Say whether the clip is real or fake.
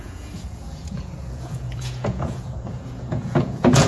fake